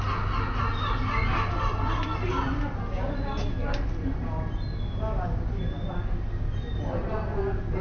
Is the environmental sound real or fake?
real